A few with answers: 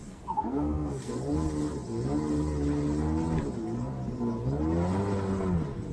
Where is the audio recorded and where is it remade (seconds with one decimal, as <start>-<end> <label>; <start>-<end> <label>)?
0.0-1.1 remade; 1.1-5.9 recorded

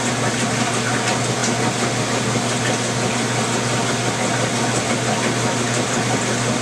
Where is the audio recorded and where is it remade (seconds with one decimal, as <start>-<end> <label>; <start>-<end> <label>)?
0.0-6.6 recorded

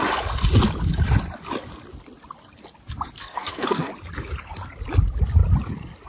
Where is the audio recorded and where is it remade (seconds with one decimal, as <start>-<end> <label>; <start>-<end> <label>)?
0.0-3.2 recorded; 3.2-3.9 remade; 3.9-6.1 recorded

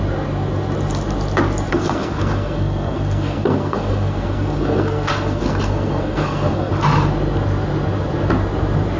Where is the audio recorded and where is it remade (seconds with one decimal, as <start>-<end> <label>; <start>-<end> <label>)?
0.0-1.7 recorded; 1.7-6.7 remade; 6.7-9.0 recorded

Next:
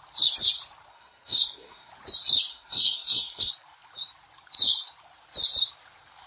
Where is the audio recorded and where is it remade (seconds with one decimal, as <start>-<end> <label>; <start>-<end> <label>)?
0.0-0.9 recorded; 0.9-1.9 remade; 1.9-2.5 recorded; 2.5-3.5 remade; 3.5-6.3 recorded